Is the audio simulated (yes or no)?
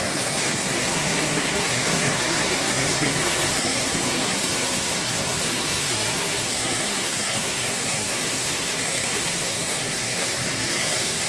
yes